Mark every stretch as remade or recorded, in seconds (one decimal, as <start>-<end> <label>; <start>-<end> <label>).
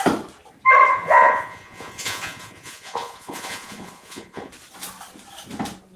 0.0-0.9 recorded; 0.9-4.5 remade; 4.5-6.0 recorded